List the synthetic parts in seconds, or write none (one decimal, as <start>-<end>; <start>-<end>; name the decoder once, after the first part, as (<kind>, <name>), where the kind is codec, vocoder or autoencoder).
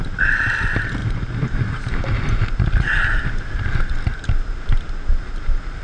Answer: none